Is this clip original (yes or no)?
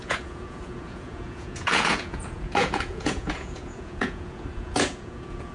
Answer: no